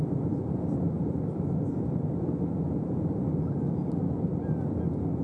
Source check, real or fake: real